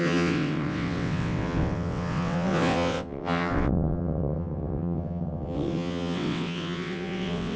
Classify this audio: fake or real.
fake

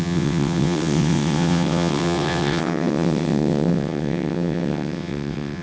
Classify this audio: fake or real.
fake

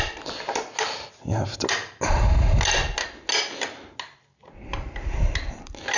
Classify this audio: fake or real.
real